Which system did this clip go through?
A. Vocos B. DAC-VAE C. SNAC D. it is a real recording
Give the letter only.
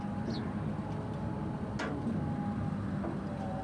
D